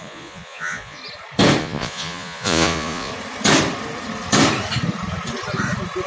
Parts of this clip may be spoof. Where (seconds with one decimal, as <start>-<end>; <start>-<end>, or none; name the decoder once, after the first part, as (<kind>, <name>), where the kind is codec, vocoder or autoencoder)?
0.0-1.0 (vocoder, Vocos); 1.6-3.1